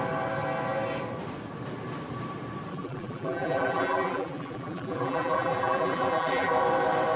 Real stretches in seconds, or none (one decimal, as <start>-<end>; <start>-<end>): 0.0-2.7; 6.5-7.2